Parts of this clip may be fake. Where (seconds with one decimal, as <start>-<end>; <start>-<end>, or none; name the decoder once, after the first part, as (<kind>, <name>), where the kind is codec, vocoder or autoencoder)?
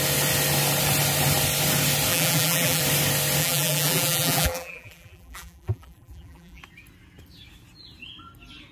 2.1-2.8 (vocoder, BigVGAN v2); 3.4-6.6